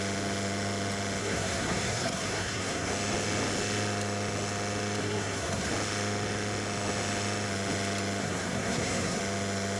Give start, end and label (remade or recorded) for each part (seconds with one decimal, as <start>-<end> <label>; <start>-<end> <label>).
0.0-1.2 recorded; 1.2-2.9 remade; 2.9-5.0 recorded; 5.0-5.7 remade; 5.7-8.2 recorded; 8.2-9.2 remade; 9.2-9.8 recorded